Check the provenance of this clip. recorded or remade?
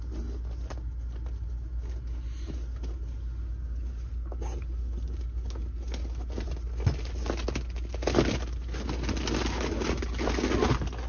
recorded